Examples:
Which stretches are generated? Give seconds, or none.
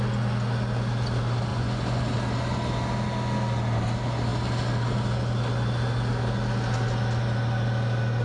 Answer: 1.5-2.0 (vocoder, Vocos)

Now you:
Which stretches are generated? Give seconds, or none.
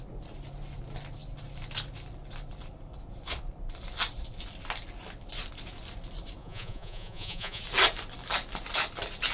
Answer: 6.4-7.6 (vocoder, Vocos)